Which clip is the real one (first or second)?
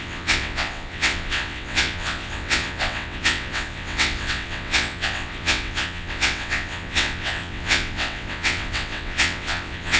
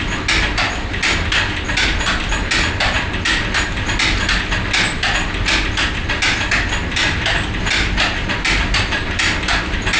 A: second